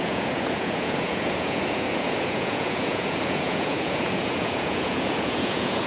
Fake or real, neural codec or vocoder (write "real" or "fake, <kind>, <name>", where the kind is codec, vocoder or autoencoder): fake, vocoder, Vocos